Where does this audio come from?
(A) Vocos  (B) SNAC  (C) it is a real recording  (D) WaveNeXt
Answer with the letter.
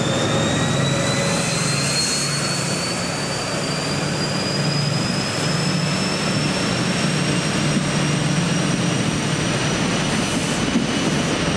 C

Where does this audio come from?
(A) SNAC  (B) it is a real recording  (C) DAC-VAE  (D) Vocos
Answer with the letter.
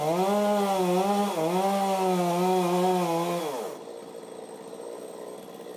B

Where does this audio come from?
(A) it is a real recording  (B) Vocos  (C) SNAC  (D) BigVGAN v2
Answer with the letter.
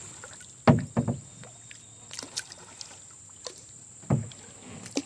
A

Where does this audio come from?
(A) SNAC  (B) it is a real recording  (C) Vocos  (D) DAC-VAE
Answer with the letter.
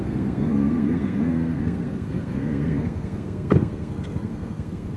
A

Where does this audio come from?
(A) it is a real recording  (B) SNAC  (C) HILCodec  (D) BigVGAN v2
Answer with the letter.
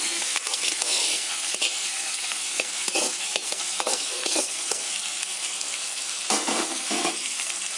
B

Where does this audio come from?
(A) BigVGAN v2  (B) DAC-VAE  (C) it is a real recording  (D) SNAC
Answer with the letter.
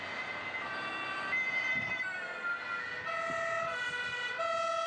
C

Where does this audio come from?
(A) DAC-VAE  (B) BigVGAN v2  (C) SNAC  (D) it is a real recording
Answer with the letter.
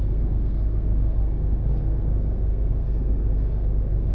C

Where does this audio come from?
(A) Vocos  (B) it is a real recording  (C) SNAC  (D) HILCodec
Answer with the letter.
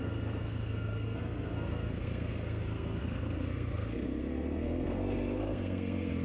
C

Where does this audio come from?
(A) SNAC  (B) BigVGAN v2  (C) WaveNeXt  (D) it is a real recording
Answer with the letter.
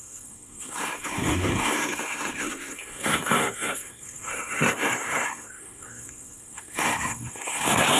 A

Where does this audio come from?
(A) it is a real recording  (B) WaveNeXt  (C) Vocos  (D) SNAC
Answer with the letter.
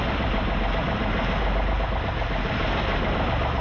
A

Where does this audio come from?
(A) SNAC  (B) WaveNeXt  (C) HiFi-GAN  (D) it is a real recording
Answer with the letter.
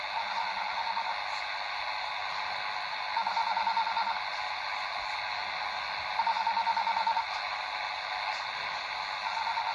D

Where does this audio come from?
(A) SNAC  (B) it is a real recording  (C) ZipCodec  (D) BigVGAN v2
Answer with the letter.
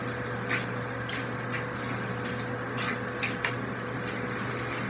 B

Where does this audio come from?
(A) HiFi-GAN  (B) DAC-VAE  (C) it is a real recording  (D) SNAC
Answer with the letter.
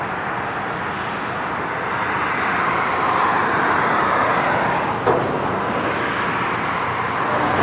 C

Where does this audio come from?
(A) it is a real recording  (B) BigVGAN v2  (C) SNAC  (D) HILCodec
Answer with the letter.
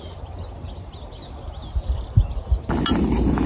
A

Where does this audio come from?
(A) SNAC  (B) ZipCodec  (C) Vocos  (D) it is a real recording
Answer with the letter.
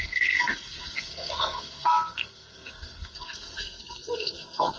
A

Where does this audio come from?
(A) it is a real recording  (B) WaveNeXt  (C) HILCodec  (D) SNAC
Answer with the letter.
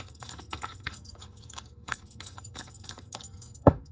D